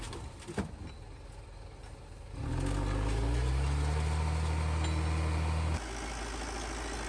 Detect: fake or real real